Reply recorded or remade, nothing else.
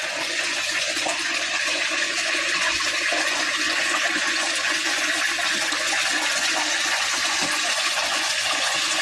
remade